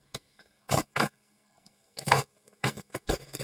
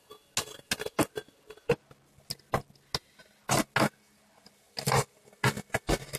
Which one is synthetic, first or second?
first